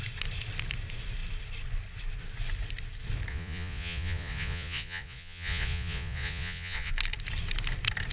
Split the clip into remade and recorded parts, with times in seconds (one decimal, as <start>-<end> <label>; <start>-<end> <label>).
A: 0.0-3.3 recorded; 3.3-6.9 remade; 6.9-8.1 recorded